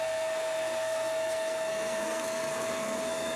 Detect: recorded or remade remade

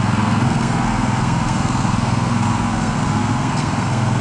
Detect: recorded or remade remade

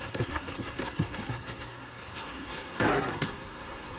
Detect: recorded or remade remade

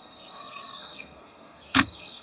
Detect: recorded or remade remade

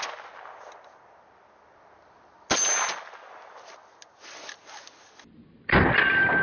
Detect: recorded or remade recorded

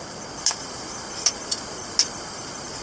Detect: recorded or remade recorded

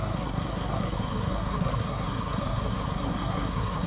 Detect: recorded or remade remade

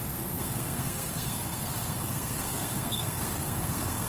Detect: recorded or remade remade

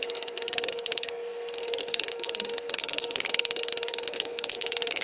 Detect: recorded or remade remade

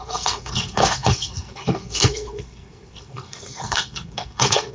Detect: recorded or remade remade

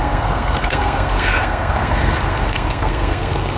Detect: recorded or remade remade